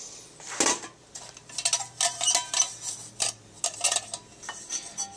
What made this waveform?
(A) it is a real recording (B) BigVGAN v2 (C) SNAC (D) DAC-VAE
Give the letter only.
A